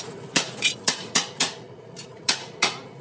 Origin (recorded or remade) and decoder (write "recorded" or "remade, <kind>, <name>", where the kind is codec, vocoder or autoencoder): remade, vocoder, Vocos